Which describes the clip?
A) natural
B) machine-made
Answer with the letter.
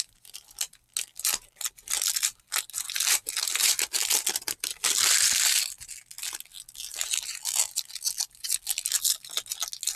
A